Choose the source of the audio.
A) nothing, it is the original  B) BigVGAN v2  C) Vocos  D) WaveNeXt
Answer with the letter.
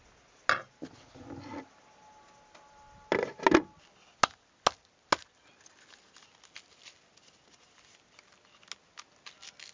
A